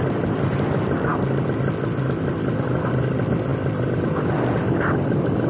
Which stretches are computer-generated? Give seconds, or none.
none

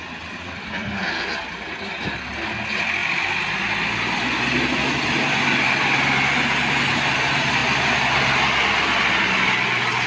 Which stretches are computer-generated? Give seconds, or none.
none